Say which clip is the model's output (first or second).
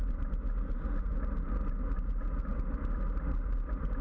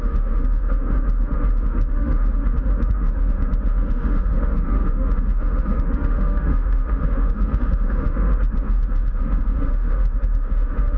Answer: second